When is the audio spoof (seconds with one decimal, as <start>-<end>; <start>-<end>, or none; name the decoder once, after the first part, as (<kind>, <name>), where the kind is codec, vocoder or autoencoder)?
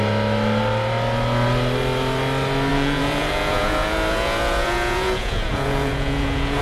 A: 2.7-6.6 (vocoder, Vocos)